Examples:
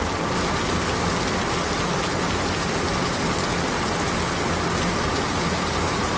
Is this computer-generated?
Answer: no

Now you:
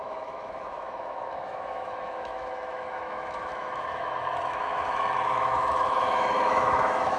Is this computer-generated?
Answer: yes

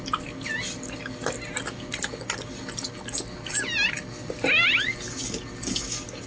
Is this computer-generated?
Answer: no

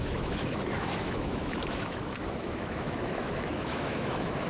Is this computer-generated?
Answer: yes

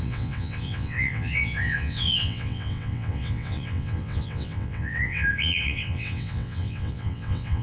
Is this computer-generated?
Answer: yes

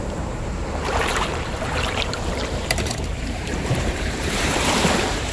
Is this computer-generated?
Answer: yes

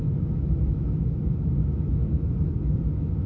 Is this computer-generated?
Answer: yes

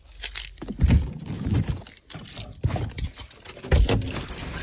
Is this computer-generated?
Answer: no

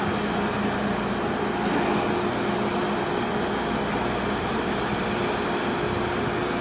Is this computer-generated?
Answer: no